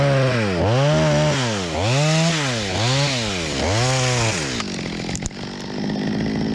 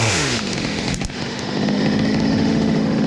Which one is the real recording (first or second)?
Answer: first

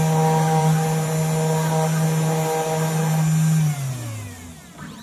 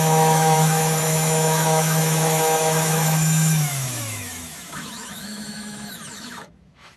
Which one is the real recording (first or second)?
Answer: first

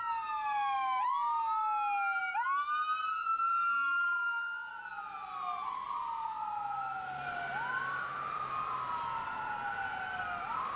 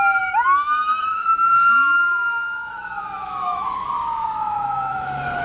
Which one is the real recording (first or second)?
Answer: first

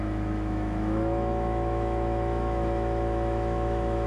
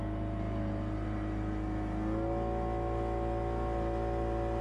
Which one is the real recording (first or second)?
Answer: second